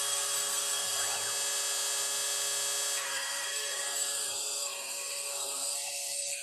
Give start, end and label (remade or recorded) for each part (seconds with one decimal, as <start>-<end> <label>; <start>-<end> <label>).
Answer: 0.0-1.0 remade; 1.0-3.0 recorded; 3.0-6.4 remade